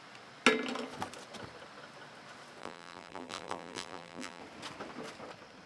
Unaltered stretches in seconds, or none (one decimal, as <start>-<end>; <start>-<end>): 0.0-2.6; 4.4-5.7